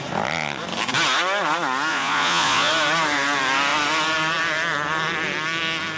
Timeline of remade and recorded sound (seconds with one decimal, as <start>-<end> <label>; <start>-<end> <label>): 0.0-1.9 recorded; 1.9-2.7 remade; 2.7-6.0 recorded